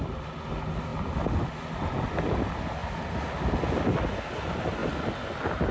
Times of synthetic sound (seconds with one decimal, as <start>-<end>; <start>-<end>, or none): none